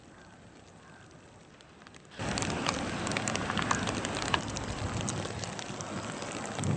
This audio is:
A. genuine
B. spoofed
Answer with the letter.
A